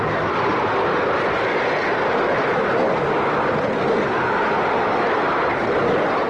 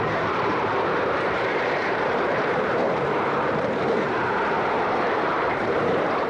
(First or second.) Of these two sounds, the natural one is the first